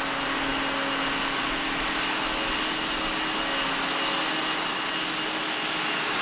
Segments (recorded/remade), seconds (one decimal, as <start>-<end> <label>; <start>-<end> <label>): 0.0-6.2 recorded